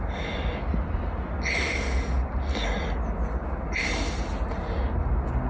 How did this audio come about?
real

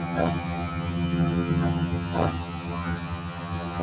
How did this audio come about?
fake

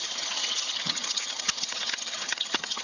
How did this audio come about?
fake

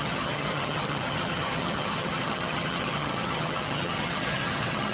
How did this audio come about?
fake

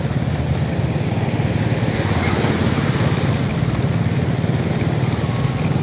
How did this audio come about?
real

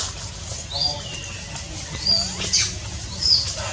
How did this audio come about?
real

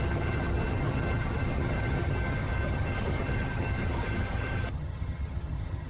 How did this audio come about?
fake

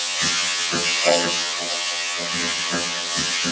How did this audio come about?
fake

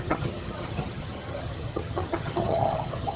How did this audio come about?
fake